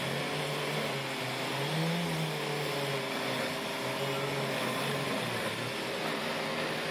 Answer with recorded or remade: recorded